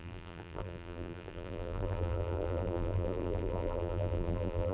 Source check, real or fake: fake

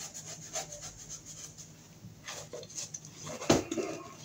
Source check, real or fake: real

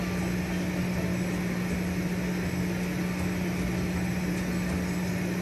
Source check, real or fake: real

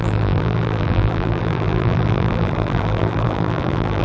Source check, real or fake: fake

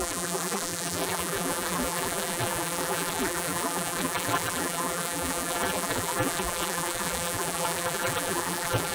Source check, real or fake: fake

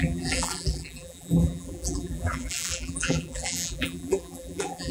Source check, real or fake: fake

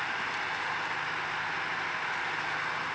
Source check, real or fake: real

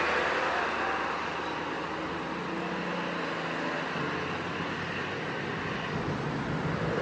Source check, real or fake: real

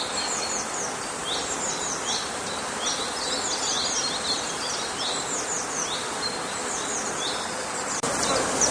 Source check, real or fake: real